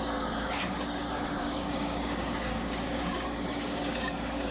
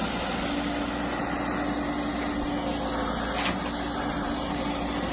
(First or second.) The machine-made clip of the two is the first